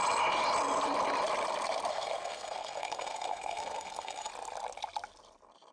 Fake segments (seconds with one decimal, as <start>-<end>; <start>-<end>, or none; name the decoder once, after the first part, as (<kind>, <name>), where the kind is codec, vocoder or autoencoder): 1.9-4.3 (codec, SNAC)